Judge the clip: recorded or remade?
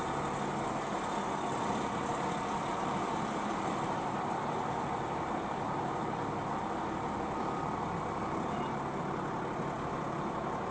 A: recorded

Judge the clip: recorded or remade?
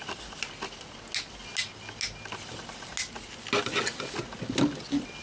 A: recorded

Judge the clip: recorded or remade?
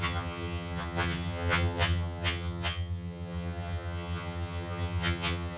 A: remade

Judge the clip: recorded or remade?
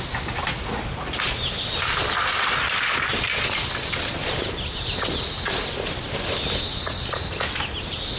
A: recorded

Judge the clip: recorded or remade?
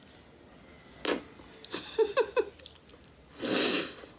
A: recorded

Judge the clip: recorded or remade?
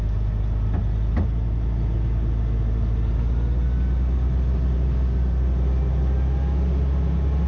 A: recorded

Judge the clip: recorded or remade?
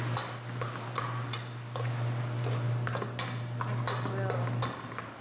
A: recorded